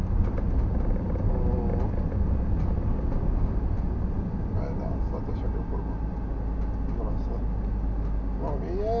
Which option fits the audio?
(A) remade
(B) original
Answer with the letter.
B